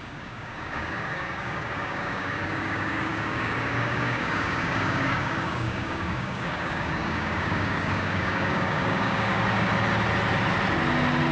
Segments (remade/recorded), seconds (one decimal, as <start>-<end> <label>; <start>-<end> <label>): 0.0-9.7 remade; 9.7-11.3 recorded